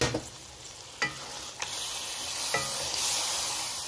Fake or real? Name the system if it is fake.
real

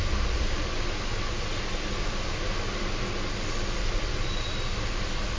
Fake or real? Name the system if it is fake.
real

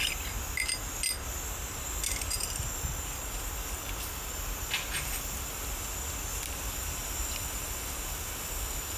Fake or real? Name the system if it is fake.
real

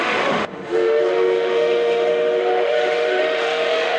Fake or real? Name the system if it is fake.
fake, autoencoder, DAC-VAE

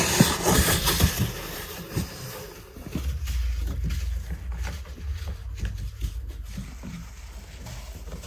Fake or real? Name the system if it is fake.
real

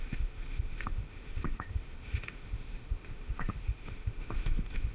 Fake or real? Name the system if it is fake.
fake, autoencoder, DAC-VAE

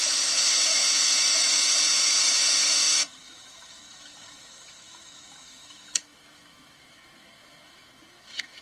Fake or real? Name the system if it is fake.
fake, autoencoder, DAC-VAE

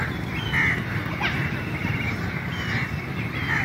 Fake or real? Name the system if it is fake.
real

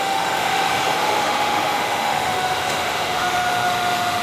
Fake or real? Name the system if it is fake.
fake, autoencoder, DAC-VAE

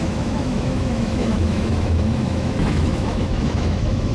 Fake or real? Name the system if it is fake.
fake, autoencoder, DAC-VAE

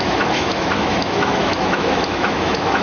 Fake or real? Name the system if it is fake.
fake, autoencoder, DAC-VAE